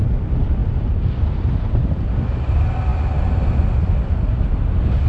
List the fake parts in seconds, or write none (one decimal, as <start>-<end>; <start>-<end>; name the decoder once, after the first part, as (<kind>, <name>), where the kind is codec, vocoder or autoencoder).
none